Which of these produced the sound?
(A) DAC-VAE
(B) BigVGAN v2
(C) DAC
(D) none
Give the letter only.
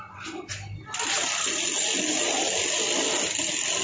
D